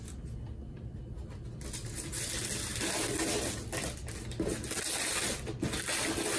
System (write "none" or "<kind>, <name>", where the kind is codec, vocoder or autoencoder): none